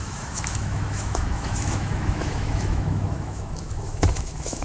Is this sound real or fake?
fake